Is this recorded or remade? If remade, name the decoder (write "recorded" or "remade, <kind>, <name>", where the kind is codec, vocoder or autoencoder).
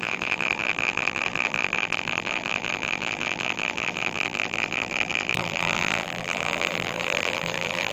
remade, vocoder, BigVGAN v2